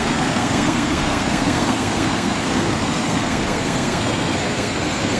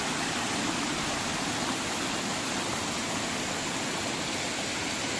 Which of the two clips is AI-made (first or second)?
first